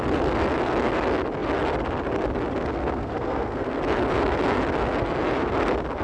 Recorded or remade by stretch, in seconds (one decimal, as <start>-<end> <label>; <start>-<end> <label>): 0.0-2.7 recorded; 2.7-3.8 remade; 3.8-6.0 recorded